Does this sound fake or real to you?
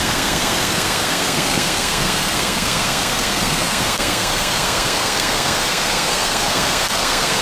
fake